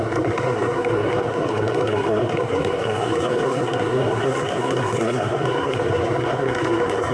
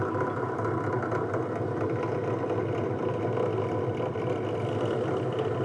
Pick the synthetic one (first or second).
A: first